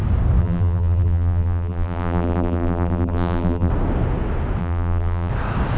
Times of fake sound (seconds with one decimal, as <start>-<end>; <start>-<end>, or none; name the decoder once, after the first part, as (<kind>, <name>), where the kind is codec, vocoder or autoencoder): 0.4-3.7 (vocoder, BigVGAN v2); 4.6-5.3